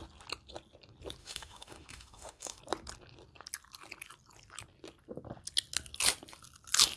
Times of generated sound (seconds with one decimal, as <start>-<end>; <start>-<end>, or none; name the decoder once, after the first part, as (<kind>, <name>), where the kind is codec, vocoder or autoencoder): 1.2-2.6 (autoencoder, DAC-VAE)